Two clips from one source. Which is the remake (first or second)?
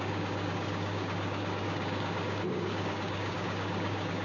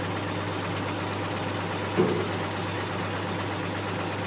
first